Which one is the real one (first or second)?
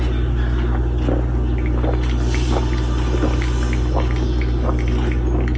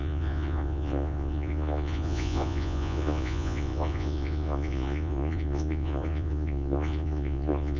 first